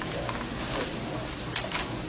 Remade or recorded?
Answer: recorded